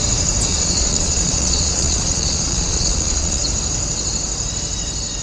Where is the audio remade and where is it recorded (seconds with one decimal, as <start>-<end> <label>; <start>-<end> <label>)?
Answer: 0.0-0.5 recorded; 0.5-3.4 remade; 3.4-5.2 recorded